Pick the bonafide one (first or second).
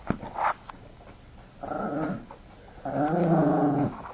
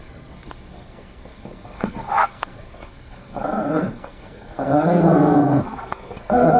first